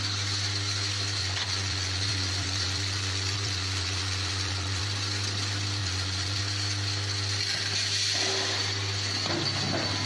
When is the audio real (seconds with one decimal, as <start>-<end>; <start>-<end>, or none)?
0.0-1.2; 4.8-5.8; 6.4-10.0